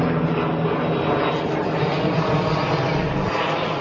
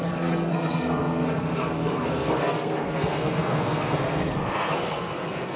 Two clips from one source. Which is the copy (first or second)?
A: second